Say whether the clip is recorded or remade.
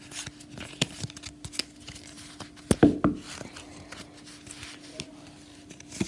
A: recorded